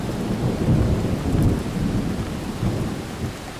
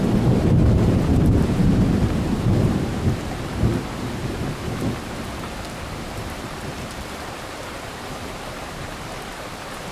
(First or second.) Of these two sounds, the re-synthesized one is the second